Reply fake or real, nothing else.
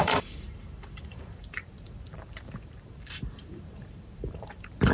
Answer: fake